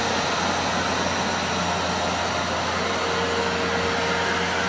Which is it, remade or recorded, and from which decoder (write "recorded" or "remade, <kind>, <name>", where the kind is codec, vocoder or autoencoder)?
recorded